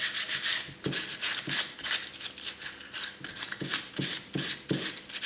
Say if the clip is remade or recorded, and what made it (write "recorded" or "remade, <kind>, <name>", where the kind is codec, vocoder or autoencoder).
recorded